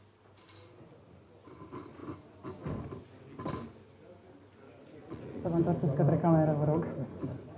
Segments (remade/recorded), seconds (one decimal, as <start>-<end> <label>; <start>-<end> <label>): 0.0-5.0 recorded; 5.0-5.6 remade; 5.6-7.6 recorded